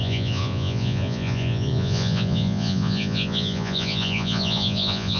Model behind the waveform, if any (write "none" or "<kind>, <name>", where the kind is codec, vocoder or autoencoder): vocoder, Vocos